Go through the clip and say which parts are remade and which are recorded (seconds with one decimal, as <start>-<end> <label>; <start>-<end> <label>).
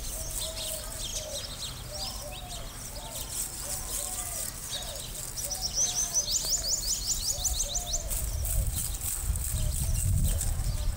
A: 0.0-11.0 recorded